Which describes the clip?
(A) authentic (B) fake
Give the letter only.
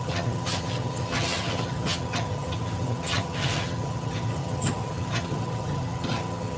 B